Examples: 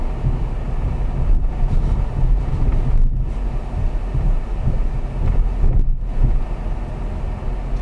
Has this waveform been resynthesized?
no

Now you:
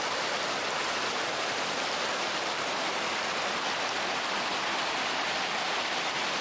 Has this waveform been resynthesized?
no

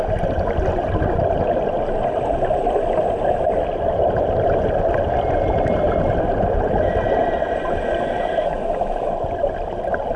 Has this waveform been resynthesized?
no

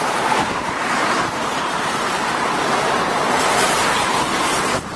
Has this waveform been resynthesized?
yes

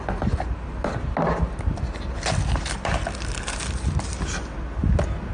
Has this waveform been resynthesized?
no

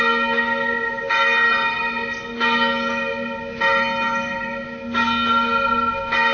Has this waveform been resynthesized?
no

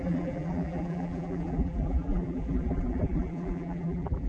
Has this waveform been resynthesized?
yes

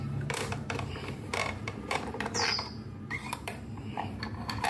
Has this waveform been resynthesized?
yes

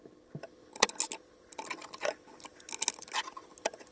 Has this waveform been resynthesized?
no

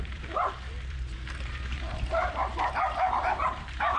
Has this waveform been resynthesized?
yes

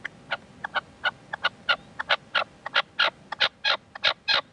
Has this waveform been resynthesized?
no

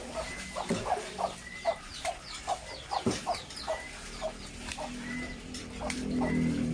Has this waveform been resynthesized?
yes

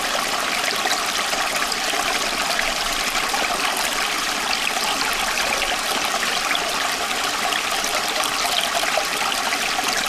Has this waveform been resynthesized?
yes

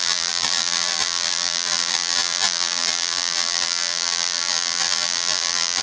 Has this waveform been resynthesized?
yes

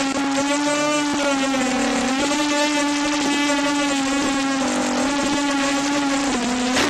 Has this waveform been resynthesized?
no